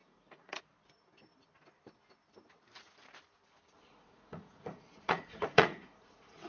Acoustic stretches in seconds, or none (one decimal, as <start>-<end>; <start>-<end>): 0.6-3.9